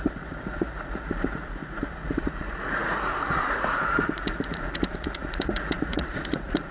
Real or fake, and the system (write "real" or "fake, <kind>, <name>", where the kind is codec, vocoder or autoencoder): fake, vocoder, Vocos